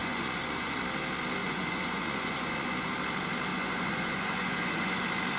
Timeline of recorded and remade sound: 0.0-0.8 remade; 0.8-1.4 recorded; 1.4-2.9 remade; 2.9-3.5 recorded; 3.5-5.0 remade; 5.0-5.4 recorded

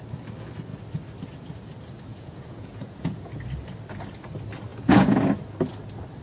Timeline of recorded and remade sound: 0.0-2.1 recorded; 2.1-3.3 remade; 3.3-4.7 recorded; 4.7-5.2 remade; 5.2-6.2 recorded

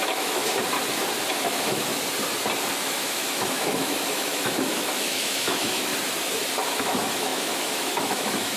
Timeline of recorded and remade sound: 0.0-0.4 remade; 0.4-1.3 recorded; 1.3-1.9 remade; 1.9-2.8 recorded; 2.8-5.9 remade; 5.9-6.8 recorded; 6.8-8.6 remade

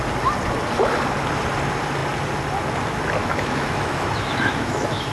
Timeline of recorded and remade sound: 0.0-3.2 recorded; 3.2-5.1 remade

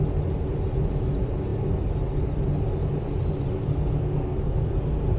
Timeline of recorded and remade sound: 0.0-4.0 recorded; 4.0-4.7 remade; 4.7-5.2 recorded

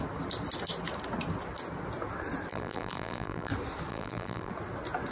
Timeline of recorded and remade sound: 0.0-2.5 recorded; 2.5-3.5 remade; 3.5-3.9 recorded; 3.9-4.5 remade; 4.5-5.1 recorded

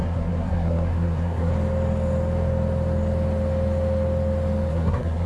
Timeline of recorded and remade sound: 0.0-1.5 remade; 1.5-4.7 recorded; 4.7-5.3 remade

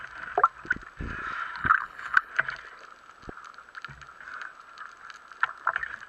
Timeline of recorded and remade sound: 0.0-1.6 recorded; 1.6-2.3 remade; 2.3-6.1 recorded